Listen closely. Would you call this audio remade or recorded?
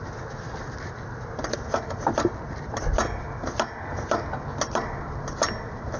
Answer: recorded